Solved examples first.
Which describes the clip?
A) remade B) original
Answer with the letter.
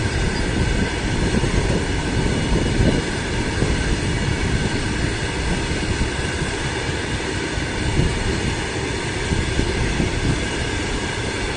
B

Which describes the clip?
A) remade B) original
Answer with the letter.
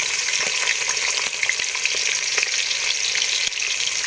B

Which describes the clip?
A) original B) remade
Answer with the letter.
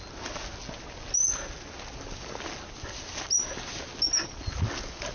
A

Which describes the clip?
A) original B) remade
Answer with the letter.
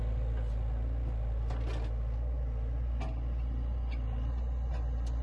A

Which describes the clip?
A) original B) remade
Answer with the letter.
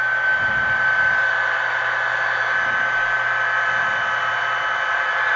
A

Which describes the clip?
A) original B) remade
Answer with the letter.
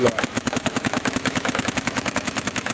B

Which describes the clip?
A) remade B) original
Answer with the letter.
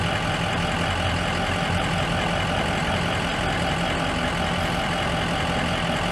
B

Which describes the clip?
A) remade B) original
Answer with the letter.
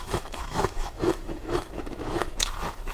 A